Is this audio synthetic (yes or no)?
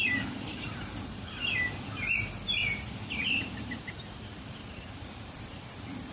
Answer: yes